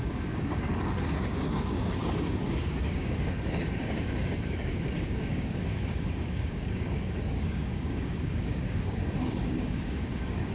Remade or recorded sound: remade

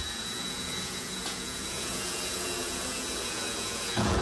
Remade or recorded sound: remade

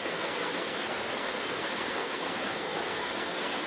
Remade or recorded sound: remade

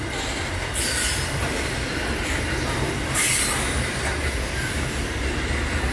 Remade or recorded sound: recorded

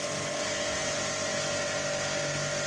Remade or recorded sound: recorded